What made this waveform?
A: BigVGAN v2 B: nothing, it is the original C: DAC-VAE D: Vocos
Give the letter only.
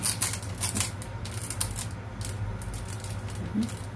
B